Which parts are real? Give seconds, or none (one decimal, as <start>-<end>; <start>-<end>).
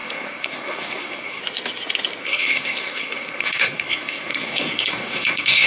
1.4-2.2